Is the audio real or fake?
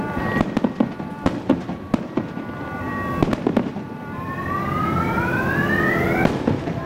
fake